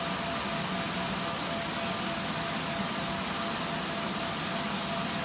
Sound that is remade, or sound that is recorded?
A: recorded